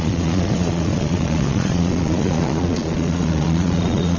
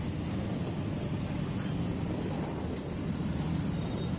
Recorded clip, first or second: second